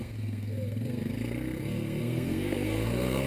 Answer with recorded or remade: remade